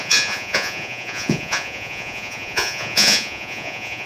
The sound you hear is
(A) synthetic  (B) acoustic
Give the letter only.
A